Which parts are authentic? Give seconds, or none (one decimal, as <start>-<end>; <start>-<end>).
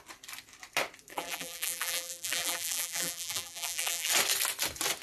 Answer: 0.0-1.1; 4.1-5.0